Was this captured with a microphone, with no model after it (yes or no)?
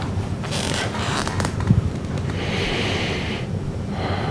no